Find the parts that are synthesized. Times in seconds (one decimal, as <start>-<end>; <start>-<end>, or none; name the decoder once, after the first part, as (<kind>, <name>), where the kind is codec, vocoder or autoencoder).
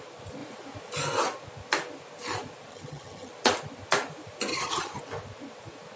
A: 2.7-3.3 (vocoder, HiFi-GAN); 4.5-5.0